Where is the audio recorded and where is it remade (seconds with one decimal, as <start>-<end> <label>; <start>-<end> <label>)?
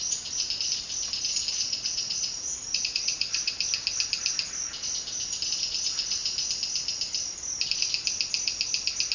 0.0-1.5 recorded; 1.5-3.6 remade; 3.6-9.1 recorded